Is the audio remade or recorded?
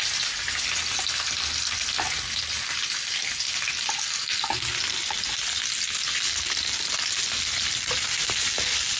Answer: recorded